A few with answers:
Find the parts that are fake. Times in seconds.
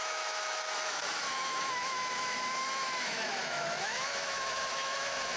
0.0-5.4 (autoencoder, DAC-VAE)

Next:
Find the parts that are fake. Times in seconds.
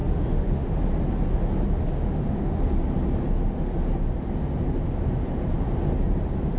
0.0-0.8 (autoencoder, DAC-VAE); 1.9-2.6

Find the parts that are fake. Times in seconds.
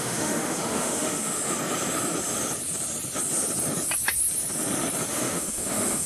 0.0-1.4 (autoencoder, DAC-VAE); 5.1-6.1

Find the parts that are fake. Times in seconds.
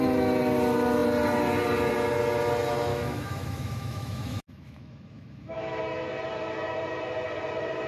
2.9-5.8 (autoencoder, DAC-VAE)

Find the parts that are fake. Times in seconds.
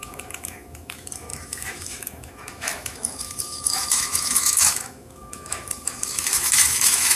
0.0-7.2 (autoencoder, DAC-VAE)